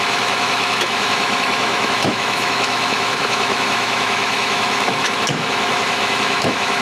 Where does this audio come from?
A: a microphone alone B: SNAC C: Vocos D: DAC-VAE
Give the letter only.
D